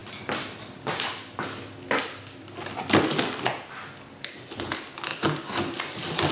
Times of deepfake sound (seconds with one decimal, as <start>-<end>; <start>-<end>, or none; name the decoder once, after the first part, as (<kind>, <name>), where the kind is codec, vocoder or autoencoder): none